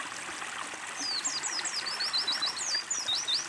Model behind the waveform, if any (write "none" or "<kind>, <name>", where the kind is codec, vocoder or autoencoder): none